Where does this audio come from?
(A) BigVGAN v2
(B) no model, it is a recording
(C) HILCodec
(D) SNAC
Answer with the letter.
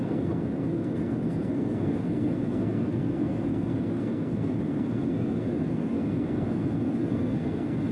D